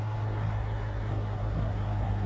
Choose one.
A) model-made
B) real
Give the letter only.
A